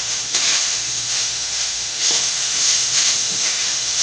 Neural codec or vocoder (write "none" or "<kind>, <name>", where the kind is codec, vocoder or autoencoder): autoencoder, DAC-VAE